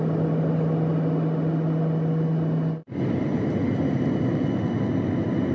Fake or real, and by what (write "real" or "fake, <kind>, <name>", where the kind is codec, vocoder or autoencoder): real